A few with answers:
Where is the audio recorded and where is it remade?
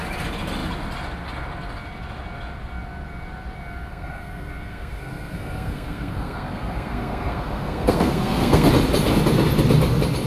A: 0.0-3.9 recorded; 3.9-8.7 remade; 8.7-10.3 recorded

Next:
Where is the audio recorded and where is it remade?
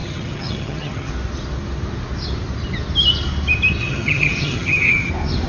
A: 0.0-1.1 remade; 1.1-3.8 recorded; 3.8-5.1 remade; 5.1-5.5 recorded